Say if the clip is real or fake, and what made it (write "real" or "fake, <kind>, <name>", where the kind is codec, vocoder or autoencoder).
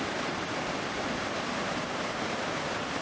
real